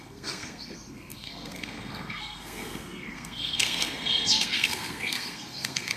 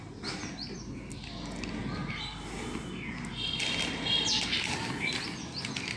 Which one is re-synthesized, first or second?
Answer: first